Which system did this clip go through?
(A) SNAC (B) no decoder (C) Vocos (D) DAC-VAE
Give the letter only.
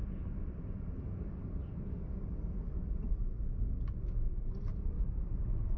B